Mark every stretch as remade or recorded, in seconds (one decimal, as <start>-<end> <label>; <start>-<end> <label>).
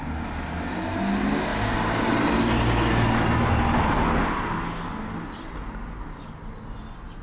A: 0.0-7.2 recorded